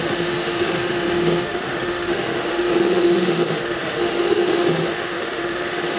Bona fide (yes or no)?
no